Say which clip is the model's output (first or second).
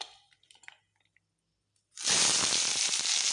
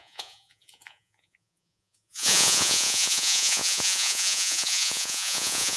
second